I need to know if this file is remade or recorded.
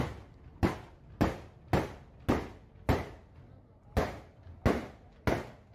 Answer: recorded